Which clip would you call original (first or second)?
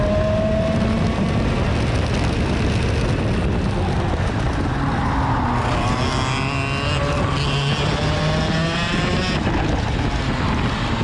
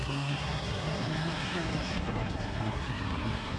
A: first